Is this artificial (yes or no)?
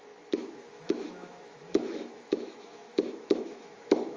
yes